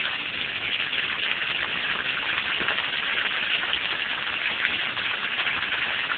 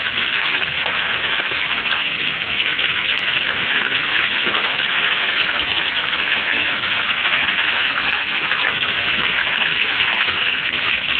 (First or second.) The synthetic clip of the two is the second